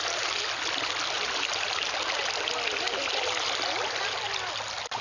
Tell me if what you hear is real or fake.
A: real